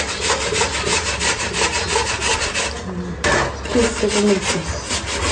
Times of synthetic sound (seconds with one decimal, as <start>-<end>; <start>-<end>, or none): none